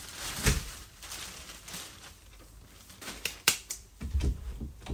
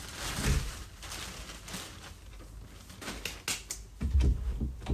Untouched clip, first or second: second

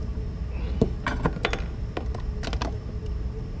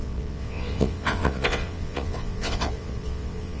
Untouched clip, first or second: first